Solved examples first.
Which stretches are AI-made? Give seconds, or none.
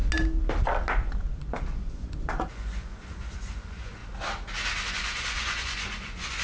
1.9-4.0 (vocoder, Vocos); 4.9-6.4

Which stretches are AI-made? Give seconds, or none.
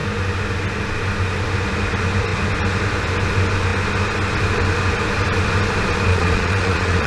6.1-7.1 (vocoder, Vocos)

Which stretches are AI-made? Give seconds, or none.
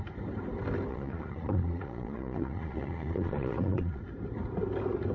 0.9-4.0 (vocoder, Vocos)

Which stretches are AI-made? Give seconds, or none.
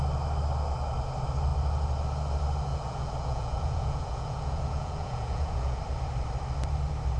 2.7-5.8 (vocoder, Vocos)